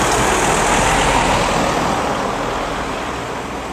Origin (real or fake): real